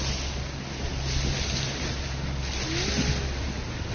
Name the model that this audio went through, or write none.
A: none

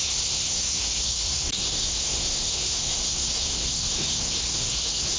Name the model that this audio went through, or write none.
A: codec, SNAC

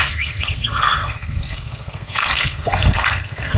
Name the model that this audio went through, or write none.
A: codec, SNAC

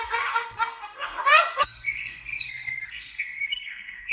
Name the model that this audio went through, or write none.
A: codec, SNAC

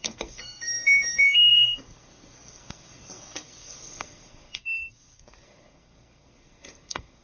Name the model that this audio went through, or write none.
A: codec, SNAC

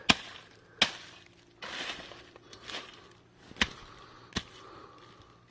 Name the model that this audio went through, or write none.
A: none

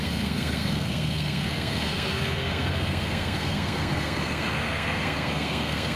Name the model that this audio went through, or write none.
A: codec, SNAC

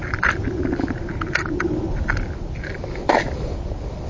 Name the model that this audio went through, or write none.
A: none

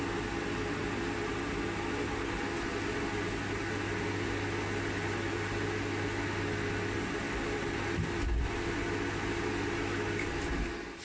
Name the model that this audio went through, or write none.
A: none